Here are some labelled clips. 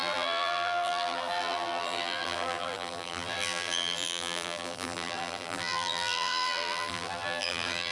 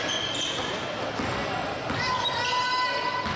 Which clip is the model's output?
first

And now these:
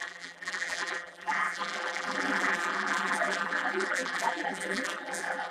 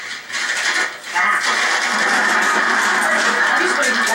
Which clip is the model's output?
first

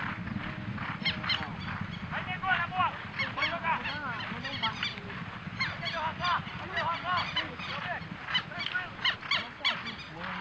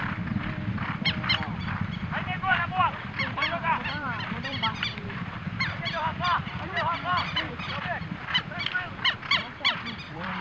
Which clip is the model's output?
second